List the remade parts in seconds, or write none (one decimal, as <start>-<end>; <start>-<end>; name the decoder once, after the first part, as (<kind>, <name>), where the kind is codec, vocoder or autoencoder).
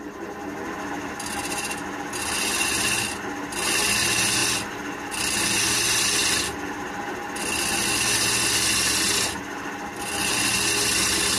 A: none